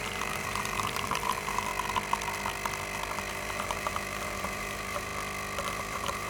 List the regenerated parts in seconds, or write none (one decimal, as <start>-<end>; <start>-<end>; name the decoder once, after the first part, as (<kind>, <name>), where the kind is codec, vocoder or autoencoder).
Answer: 0.0-1.7 (vocoder, BigVGAN v2); 3.3-5.1; 5.7-6.3